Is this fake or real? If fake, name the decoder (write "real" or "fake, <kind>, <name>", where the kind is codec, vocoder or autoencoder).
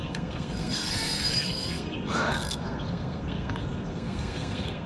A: fake, codec, SNAC